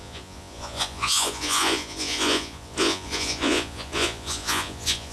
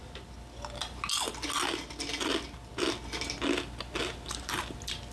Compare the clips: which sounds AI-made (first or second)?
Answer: first